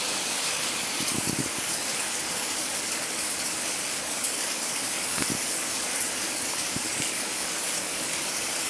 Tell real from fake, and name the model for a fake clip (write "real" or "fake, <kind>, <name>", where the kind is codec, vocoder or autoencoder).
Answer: fake, codec, DAC